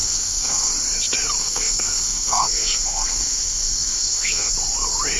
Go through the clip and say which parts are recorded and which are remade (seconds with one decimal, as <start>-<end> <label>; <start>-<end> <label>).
0.0-0.7 remade; 0.7-1.4 recorded; 1.4-4.5 remade; 4.5-5.2 recorded